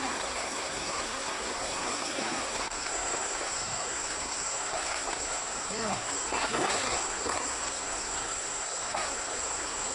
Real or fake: fake